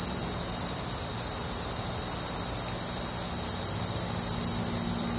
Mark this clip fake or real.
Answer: real